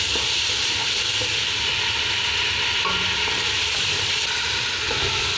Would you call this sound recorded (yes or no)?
no